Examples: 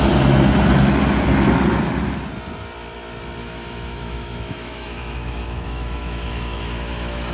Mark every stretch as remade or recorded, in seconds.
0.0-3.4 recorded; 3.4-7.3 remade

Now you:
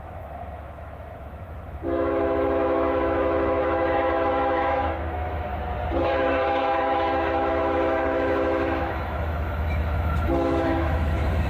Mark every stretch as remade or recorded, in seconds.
0.0-5.5 remade; 5.5-6.0 recorded; 6.0-11.5 remade

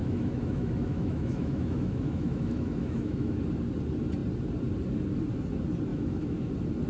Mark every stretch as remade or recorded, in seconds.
0.0-3.4 remade; 3.4-5.9 recorded; 5.9-6.5 remade; 6.5-6.9 recorded

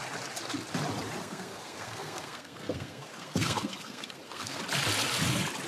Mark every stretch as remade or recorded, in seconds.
0.0-1.2 recorded; 1.2-4.6 remade; 4.6-5.7 recorded

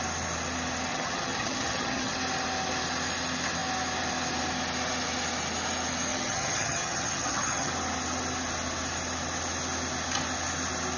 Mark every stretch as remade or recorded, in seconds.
0.0-0.9 recorded; 0.9-2.1 remade; 2.1-6.1 recorded; 6.1-7.7 remade; 7.7-11.0 recorded